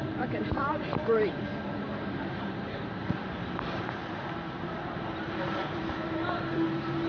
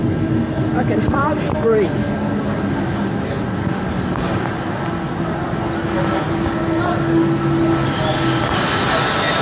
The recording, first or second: second